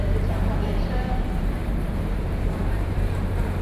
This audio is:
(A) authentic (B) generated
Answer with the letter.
B